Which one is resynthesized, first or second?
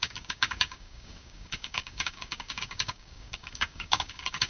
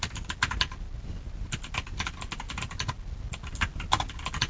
first